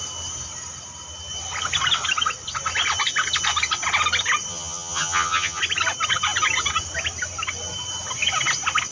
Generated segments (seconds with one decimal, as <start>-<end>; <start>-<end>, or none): 4.5-5.6